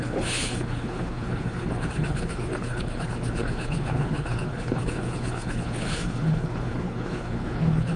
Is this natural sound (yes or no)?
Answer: no